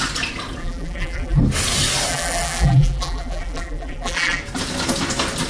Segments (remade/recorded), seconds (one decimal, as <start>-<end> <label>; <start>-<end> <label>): 0.0-0.6 recorded; 0.6-1.4 remade; 1.4-2.1 recorded; 2.1-4.4 remade; 4.4-5.5 recorded